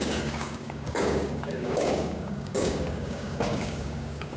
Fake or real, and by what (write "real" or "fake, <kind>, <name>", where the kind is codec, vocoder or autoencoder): fake, codec, DAC